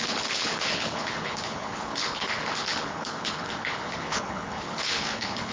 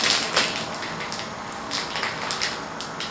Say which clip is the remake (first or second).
first